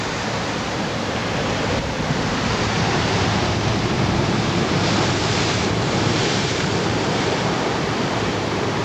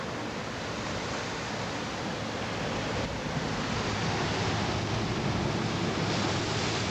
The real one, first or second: second